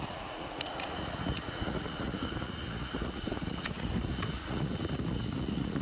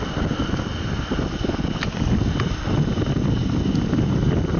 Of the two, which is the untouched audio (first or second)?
second